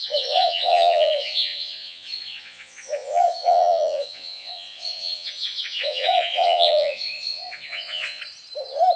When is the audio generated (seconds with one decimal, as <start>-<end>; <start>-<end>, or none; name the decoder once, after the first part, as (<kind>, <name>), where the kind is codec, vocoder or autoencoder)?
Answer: 0.0-8.2 (vocoder, Vocos)